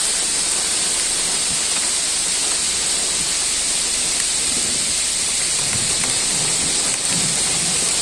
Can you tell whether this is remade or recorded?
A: recorded